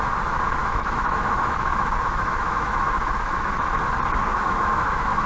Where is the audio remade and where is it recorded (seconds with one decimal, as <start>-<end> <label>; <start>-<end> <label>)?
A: 0.0-0.6 recorded; 0.6-3.8 remade; 3.8-4.4 recorded; 4.4-5.3 remade